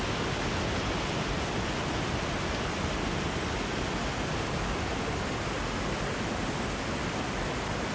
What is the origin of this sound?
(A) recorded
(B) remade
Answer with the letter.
A